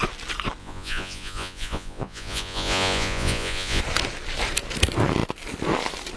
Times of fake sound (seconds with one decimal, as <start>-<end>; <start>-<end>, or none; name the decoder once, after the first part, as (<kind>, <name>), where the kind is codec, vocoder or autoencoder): 0.6-3.8 (vocoder, Vocos)

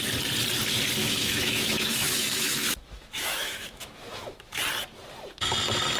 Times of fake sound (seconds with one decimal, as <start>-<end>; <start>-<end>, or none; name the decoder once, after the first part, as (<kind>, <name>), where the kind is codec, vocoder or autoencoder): 1.0-4.6 (autoencoder, DAC-VAE)